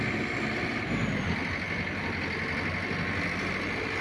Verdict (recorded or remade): recorded